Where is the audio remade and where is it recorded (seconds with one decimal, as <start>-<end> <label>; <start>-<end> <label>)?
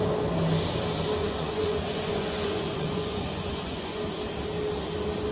0.0-1.2 recorded; 1.2-4.0 remade; 4.0-5.3 recorded